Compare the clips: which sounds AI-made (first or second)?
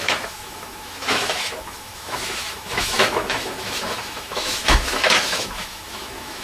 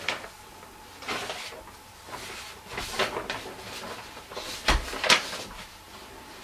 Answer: first